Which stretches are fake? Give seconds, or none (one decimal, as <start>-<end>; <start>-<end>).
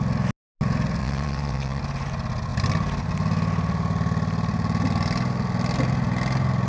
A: 1.0-1.8